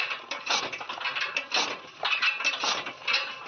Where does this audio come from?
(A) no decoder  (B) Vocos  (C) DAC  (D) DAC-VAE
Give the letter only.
A